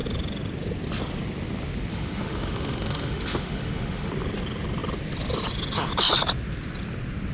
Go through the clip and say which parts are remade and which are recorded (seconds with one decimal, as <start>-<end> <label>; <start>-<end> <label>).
0.0-1.9 recorded; 1.9-4.1 remade; 4.1-7.3 recorded